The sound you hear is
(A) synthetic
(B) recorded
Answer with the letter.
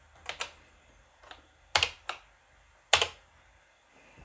B